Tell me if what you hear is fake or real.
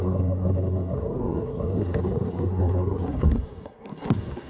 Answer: fake